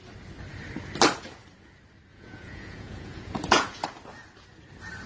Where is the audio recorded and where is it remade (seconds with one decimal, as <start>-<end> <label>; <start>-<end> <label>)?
0.0-2.1 recorded; 2.1-3.8 remade; 3.8-5.1 recorded